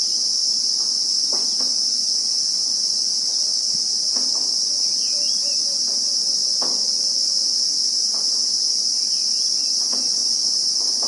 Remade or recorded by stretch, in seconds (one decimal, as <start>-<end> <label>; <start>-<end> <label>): 0.0-0.4 recorded; 0.4-2.1 remade; 2.1-4.9 recorded; 4.9-5.9 remade; 5.9-11.1 recorded